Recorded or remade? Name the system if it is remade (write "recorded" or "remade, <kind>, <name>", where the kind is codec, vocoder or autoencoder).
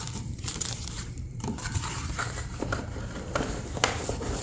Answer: remade, vocoder, BigVGAN v2